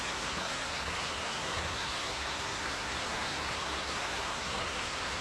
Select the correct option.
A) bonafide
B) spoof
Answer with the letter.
B